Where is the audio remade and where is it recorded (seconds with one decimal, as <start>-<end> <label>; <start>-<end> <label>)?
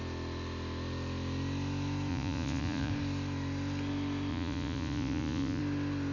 0.0-2.1 recorded; 2.1-2.9 remade; 2.9-4.3 recorded; 4.3-5.6 remade; 5.6-6.1 recorded